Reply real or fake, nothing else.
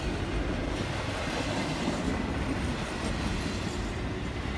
real